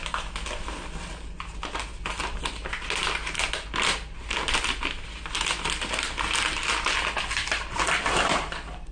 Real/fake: real